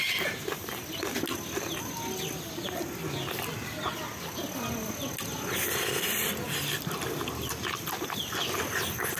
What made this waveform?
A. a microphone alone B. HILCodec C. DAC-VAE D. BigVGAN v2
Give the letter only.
A